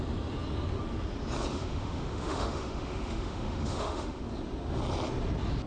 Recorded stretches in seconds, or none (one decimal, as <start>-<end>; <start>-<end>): 0.0-1.5; 4.2-5.7